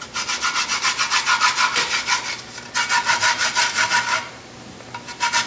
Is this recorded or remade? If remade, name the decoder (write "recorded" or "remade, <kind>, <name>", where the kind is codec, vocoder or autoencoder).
recorded